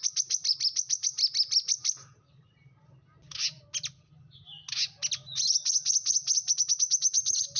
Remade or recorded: recorded